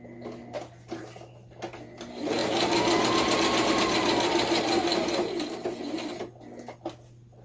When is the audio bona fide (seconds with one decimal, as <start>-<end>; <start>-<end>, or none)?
0.0-7.4

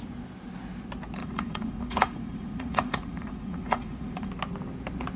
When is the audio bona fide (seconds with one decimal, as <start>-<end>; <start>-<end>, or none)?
0.0-1.2; 4.3-5.2